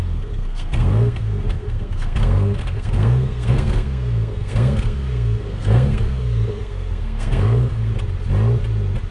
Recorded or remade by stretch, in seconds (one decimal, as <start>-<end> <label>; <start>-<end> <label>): 0.0-7.9 remade; 7.9-9.1 recorded